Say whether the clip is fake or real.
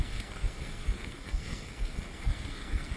fake